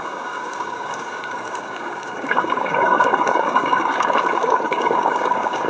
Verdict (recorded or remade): remade